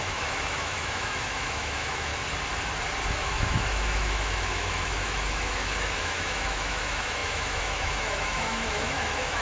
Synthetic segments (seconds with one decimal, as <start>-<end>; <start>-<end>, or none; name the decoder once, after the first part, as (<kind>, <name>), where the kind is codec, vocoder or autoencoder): 0.0-2.1 (autoencoder, DAC-VAE); 3.2-9.4